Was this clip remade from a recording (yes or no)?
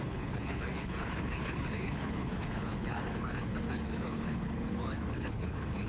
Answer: yes